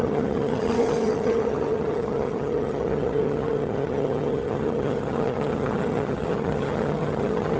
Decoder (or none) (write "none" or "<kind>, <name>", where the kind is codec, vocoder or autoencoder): vocoder, HiFi-GAN